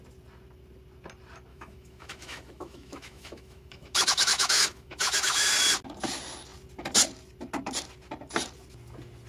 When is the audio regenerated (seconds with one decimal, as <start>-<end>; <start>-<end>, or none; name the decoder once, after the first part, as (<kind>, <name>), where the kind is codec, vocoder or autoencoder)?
1.5-5.5 (autoencoder, DAC-VAE)